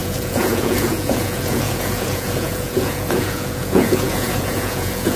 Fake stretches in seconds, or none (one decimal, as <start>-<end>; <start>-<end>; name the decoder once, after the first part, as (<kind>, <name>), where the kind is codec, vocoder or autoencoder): 0.0-5.2 (vocoder, Vocos)